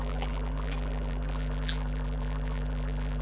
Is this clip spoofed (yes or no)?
yes